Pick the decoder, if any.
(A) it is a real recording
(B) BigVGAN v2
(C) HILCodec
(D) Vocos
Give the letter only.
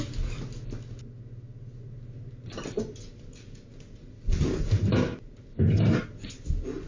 A